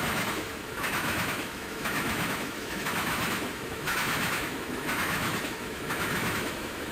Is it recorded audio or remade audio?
remade